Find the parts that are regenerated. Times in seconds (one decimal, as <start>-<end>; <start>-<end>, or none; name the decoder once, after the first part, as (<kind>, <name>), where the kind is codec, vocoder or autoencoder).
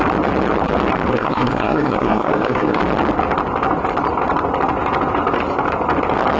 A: 1.1-2.8 (codec, SNAC)